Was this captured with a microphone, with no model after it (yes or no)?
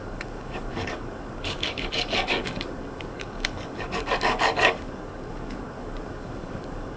no